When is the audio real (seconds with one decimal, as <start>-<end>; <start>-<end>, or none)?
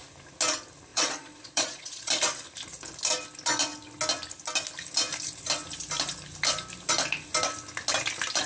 0.0-0.9; 2.1-8.5